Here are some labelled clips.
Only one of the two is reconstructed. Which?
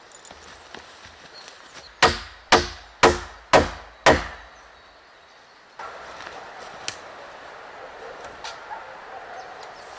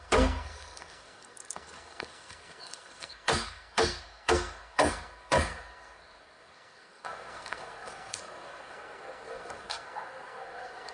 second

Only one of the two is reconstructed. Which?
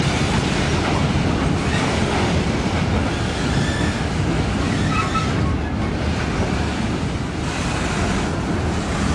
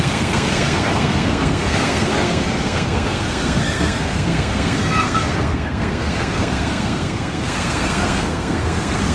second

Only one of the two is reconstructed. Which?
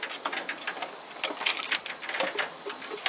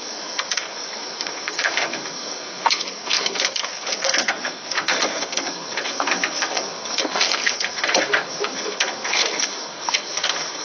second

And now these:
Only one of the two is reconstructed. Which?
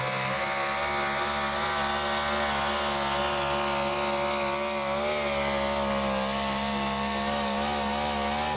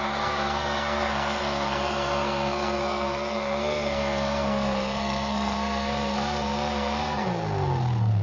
second